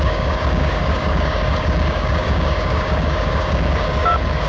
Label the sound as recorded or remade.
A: remade